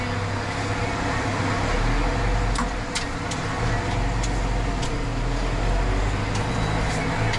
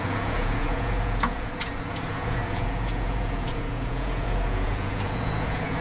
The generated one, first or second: second